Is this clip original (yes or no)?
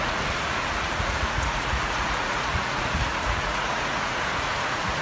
no